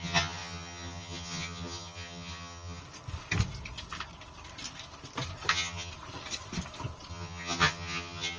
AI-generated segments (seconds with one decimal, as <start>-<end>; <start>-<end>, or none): 0.0-2.8; 5.5-5.9; 7.1-8.4

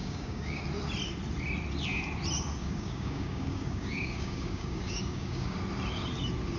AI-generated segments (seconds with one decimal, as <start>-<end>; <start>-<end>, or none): 0.0-0.6; 2.6-5.6

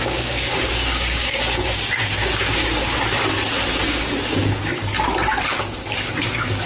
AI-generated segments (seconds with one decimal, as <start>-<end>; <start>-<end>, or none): 0.0-2.9; 3.7-4.7; 5.5-6.7